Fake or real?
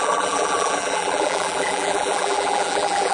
fake